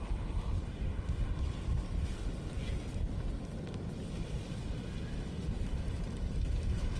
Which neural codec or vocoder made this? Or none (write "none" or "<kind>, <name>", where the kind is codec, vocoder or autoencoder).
none